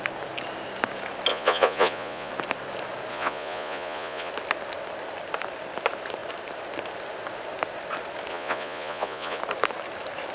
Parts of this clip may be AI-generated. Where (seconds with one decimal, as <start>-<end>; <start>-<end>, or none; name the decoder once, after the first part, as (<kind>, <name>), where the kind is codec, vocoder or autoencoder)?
1.3-2.3 (vocoder, Vocos); 3.1-4.3; 8.3-9.4